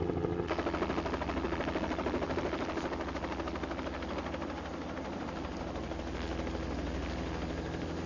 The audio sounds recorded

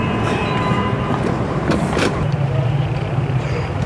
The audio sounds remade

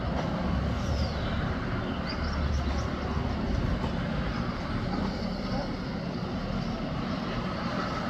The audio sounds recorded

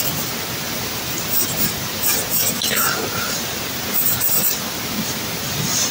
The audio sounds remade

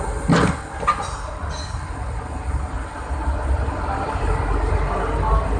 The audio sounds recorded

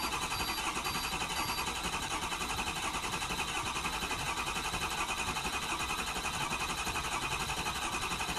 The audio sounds recorded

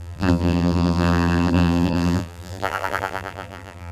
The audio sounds remade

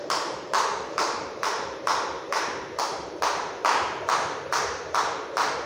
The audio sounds remade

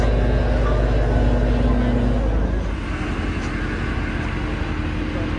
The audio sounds recorded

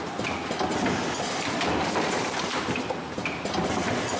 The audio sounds recorded